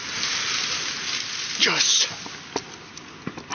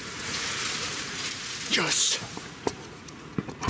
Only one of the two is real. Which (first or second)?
first